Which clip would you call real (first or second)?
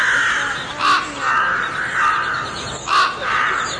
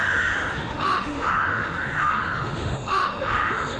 first